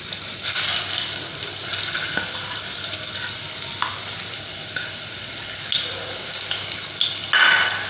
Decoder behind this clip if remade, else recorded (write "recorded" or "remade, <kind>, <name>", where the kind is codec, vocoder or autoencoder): recorded